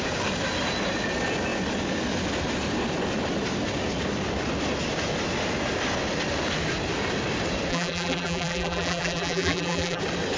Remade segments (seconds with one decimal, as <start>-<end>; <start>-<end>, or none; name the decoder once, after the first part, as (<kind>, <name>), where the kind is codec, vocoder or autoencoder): 7.7-10.0 (vocoder, BigVGAN v2)